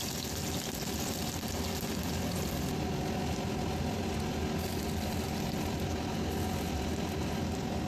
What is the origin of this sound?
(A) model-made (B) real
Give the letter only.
B